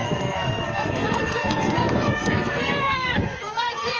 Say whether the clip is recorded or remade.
remade